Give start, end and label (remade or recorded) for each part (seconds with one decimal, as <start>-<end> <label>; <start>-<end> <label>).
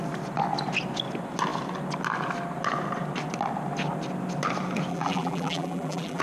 0.0-4.9 recorded; 4.9-6.2 remade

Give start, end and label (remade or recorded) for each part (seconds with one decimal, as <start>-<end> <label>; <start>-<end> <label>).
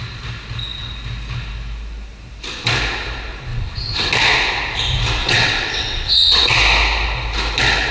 0.0-3.5 recorded; 3.5-4.1 remade; 4.1-5.2 recorded; 5.2-6.5 remade; 6.5-7.9 recorded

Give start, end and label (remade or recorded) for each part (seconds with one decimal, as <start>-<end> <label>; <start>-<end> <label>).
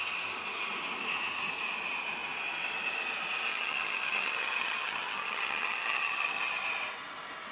0.0-3.5 recorded; 3.5-6.5 remade; 6.5-7.5 recorded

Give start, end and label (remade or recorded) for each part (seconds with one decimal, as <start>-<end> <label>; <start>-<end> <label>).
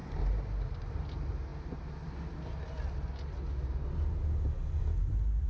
0.0-5.5 recorded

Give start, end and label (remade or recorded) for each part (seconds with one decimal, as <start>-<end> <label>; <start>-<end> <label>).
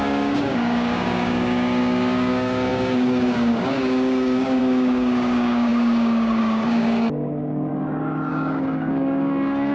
0.0-7.7 remade; 7.7-8.3 recorded; 8.3-9.7 remade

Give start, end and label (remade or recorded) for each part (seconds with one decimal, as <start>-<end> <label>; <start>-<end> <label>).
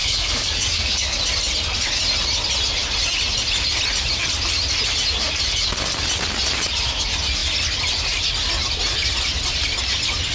0.0-1.2 remade; 1.2-10.3 recorded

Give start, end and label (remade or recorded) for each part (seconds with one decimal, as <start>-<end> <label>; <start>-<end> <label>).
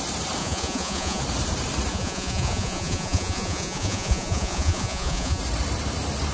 0.0-0.4 recorded; 0.4-1.2 remade; 1.2-1.9 recorded; 1.9-5.4 remade; 5.4-6.3 recorded